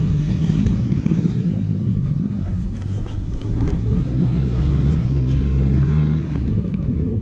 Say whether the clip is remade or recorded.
remade